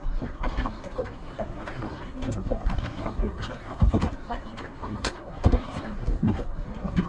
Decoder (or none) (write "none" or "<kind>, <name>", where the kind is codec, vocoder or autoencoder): codec, SNAC